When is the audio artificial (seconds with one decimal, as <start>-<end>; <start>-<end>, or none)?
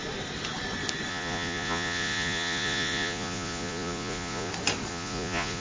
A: 1.1-4.5; 4.9-5.6